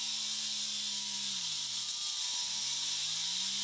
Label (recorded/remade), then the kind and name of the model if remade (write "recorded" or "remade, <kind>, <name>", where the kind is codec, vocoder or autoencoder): recorded